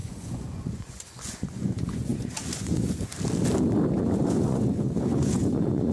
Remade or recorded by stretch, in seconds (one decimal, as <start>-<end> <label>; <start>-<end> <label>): 0.0-3.1 remade; 3.1-4.0 recorded; 4.0-5.9 remade